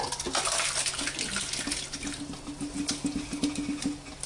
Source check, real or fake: real